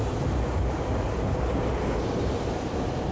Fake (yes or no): no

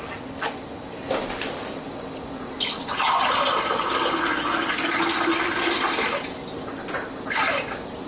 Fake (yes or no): no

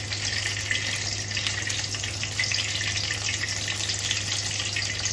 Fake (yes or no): no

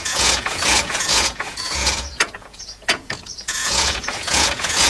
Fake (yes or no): yes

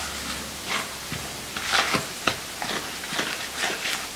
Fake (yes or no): no